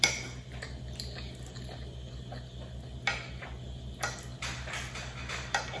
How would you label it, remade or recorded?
recorded